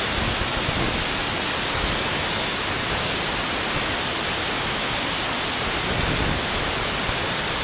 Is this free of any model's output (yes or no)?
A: yes